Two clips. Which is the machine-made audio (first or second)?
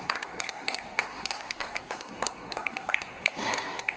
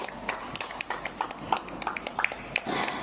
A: first